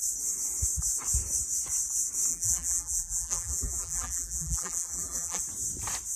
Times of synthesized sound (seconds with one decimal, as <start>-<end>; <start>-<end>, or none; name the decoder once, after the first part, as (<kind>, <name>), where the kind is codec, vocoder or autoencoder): 2.3-5.4 (vocoder, BigVGAN v2)